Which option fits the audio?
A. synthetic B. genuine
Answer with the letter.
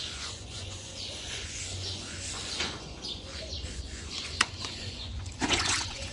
A